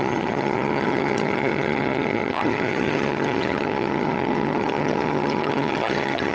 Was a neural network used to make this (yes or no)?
yes